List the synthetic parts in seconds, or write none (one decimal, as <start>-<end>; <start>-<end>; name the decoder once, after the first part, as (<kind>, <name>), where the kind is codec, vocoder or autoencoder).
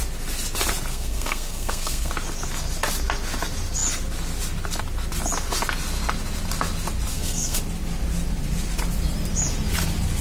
0.9-2.1 (codec, SNAC); 7.1-7.6